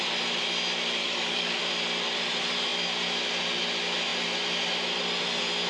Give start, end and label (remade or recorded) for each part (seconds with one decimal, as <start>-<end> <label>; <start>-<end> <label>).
0.0-1.0 recorded; 1.0-1.6 remade; 1.6-5.7 recorded